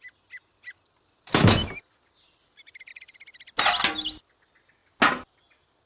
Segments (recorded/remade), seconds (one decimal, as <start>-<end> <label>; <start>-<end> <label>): 0.0-5.9 recorded